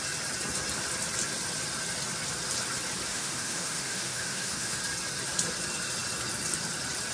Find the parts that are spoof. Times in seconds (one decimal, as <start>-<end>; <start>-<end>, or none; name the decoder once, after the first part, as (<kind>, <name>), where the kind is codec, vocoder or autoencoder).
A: 3.1-4.8 (autoencoder, DAC-VAE)